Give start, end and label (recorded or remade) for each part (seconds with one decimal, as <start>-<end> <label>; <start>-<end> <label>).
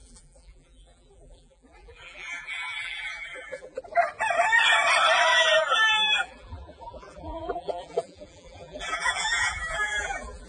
0.0-3.8 remade; 3.8-5.3 recorded; 5.3-10.5 remade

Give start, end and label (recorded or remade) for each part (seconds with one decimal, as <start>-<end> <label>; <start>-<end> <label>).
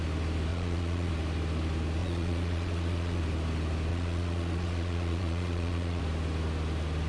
0.0-0.5 recorded; 0.5-1.1 remade; 1.1-2.0 recorded; 2.0-3.2 remade; 3.2-3.9 recorded; 3.9-6.0 remade; 6.0-7.1 recorded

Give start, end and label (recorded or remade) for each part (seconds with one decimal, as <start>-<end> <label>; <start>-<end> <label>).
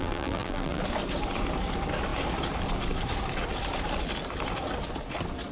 0.0-0.8 remade; 0.8-5.5 recorded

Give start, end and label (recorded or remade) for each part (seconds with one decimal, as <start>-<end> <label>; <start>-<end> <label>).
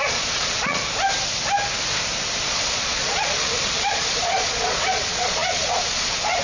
0.0-0.8 remade; 0.8-2.5 recorded; 2.5-6.4 remade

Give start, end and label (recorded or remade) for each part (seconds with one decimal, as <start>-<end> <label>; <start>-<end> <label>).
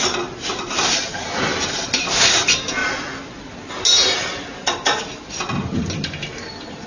0.0-6.9 recorded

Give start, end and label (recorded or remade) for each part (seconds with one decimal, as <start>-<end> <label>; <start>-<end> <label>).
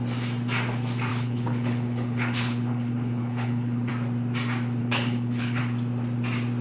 0.0-1.1 recorded; 1.1-3.9 remade; 3.9-4.8 recorded; 4.8-5.6 remade; 5.6-6.6 recorded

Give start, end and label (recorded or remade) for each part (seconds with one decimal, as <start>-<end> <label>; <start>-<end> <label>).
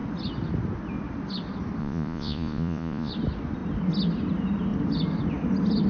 0.0-1.8 recorded; 1.8-3.1 remade; 3.1-5.9 recorded